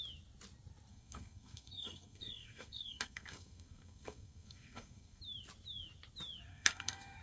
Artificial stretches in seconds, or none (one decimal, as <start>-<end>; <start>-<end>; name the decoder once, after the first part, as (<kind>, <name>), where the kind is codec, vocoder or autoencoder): 0.9-5.2 (codec, SNAC); 6.5-7.2